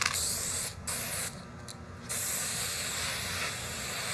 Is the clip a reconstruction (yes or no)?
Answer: no